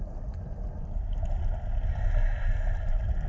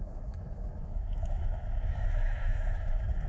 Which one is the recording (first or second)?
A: first